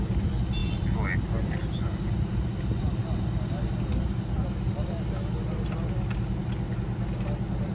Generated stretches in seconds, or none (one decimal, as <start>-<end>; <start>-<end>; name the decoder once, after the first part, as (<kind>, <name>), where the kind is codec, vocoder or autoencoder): none